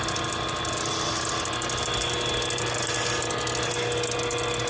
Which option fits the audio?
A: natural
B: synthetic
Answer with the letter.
A